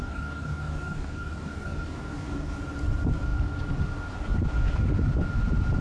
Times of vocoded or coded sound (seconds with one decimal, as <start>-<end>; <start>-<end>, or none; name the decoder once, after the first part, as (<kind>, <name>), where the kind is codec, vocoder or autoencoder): 0.0-2.6 (codec, DAC)